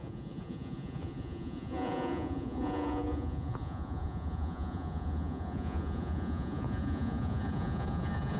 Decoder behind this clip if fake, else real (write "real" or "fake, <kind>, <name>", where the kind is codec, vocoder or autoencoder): fake, vocoder, Vocos